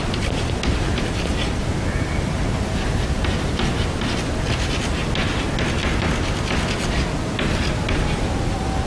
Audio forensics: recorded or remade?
recorded